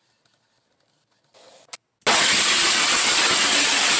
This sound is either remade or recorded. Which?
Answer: recorded